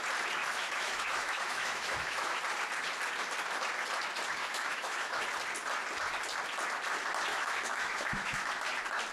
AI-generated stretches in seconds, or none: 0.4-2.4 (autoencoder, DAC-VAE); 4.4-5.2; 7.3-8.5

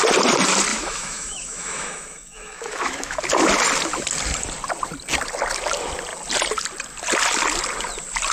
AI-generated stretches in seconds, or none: 0.7-3.2 (autoencoder, DAC-VAE)